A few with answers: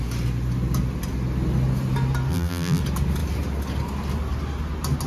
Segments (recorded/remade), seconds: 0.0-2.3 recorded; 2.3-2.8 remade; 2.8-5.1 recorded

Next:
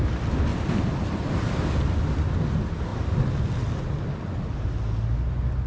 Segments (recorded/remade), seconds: 0.0-0.5 recorded; 0.5-1.5 remade; 1.5-5.7 recorded

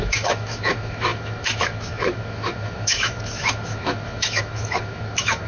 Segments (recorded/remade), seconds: 0.0-5.5 remade

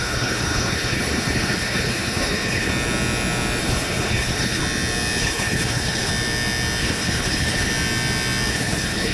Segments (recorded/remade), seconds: 0.0-2.7 remade; 2.7-3.6 recorded; 3.6-4.6 remade; 4.6-5.2 recorded; 5.2-6.1 remade; 6.1-6.8 recorded; 6.8-7.7 remade; 7.7-8.5 recorded; 8.5-9.1 remade

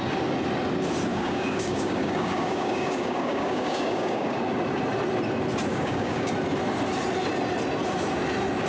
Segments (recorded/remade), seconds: 0.0-1.1 recorded; 1.1-4.4 remade; 4.4-5.7 recorded; 5.7-6.3 remade; 6.3-8.7 recorded

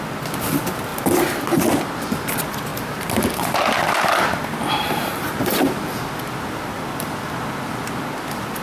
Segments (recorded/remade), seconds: 0.0-2.7 recorded; 2.7-5.4 remade; 5.4-8.6 recorded

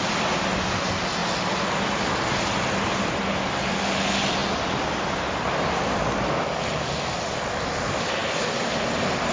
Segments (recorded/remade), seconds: 0.0-9.3 recorded